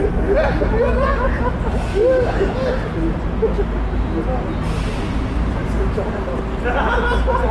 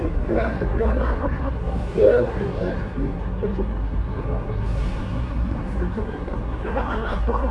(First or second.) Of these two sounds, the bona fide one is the first